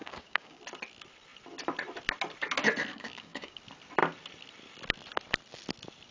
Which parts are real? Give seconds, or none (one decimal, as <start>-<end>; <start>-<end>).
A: 0.6-2.9; 3.6-6.1